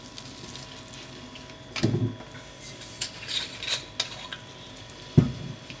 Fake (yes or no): no